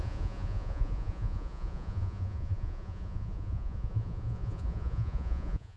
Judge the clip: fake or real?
fake